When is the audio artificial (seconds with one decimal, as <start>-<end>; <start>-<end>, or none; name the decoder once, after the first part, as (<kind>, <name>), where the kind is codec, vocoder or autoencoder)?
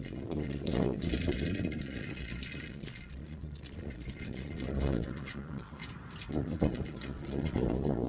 0.0-5.8 (vocoder, Vocos); 6.3-8.1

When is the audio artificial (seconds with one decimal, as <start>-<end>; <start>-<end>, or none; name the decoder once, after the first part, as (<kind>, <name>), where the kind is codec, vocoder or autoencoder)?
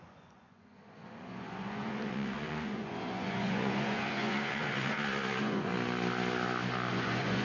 0.0-5.7 (vocoder, Vocos); 6.9-7.4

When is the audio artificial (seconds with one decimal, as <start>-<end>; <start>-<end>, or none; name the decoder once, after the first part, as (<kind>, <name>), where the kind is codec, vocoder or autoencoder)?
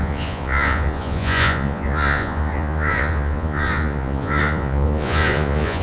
0.0-5.8 (vocoder, Vocos)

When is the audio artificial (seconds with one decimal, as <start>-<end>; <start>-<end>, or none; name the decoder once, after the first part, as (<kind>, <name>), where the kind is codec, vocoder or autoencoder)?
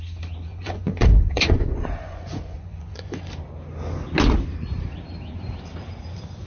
0.5-3.3 (vocoder, Vocos)